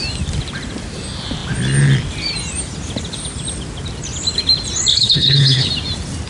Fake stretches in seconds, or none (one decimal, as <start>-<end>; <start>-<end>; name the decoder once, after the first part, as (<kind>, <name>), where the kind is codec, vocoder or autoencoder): 4.9-5.7 (codec, HILCodec)